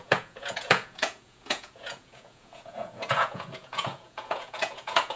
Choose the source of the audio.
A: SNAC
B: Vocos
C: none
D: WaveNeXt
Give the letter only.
B